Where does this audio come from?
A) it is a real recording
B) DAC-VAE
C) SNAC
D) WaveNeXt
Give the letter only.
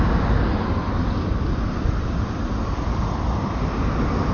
A